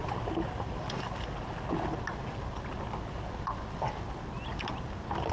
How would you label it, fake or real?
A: real